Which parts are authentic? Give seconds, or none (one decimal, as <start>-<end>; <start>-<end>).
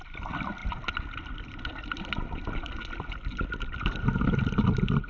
0.0-5.1